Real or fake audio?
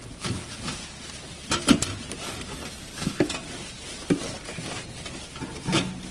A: real